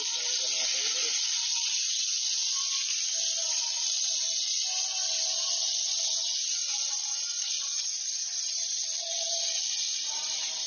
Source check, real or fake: real